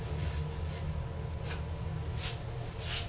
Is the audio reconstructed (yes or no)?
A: no